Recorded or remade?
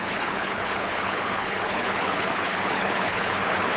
remade